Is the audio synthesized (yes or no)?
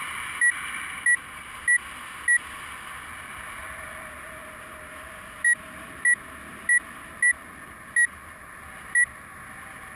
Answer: no